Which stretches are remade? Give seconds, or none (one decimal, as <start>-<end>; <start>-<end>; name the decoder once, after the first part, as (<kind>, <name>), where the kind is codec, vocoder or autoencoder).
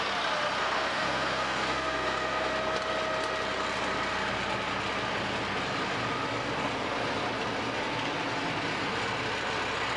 0.6-2.5 (codec, SNAC)